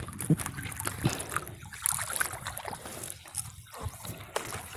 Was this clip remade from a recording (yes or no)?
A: no